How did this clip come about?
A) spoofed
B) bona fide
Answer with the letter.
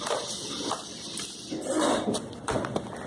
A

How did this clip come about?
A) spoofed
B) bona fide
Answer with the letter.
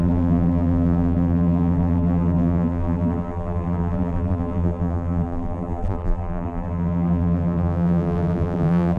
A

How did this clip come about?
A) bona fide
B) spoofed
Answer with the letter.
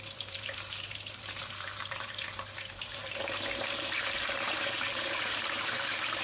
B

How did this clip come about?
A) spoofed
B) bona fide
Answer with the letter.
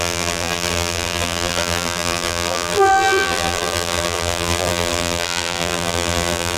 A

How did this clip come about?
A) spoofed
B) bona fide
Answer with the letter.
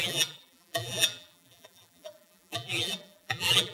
A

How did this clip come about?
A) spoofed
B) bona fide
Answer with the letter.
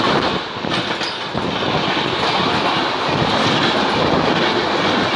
B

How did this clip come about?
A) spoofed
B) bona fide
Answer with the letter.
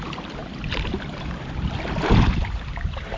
A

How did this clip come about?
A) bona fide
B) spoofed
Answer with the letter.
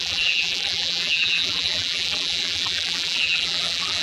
B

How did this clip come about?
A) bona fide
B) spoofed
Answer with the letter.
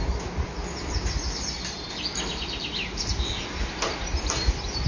A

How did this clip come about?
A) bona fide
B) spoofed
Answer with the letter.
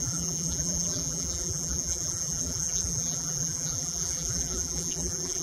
B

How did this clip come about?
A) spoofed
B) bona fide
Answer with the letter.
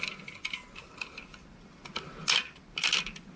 B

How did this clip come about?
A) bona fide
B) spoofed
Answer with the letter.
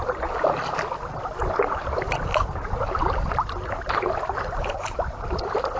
A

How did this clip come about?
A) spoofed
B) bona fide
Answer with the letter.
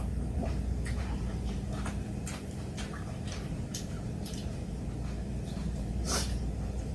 A